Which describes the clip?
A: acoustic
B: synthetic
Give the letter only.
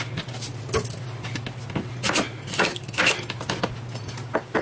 A